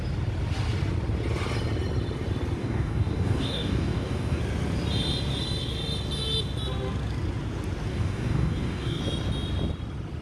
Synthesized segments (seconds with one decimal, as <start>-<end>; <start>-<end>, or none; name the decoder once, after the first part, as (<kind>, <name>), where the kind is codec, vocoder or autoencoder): 2.6-4.4 (codec, DAC); 7.9-9.0